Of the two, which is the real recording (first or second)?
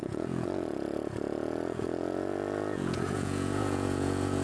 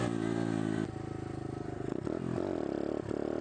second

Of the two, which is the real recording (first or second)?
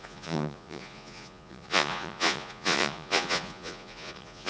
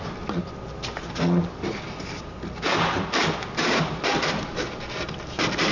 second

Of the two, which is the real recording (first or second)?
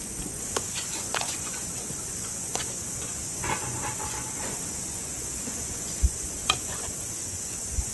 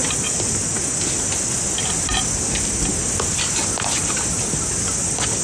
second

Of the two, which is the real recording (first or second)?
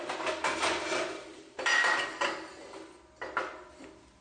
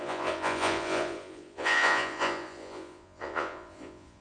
first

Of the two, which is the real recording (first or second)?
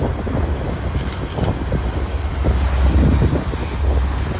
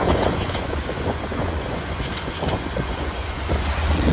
first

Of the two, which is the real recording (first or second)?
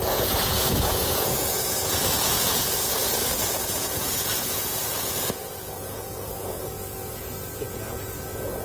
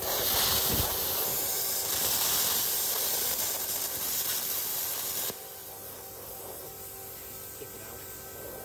second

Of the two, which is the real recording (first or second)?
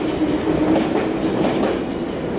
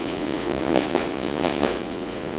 first